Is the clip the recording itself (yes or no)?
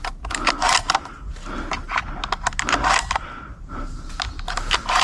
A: yes